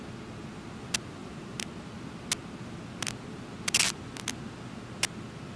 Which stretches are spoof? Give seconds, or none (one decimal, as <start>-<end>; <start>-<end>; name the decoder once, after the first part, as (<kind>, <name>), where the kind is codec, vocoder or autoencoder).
none